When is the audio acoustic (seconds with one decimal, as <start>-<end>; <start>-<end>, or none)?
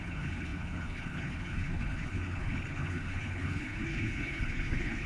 none